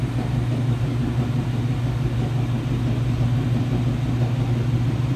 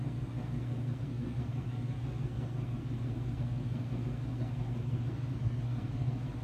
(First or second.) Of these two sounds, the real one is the first